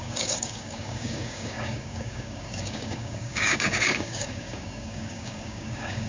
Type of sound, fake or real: fake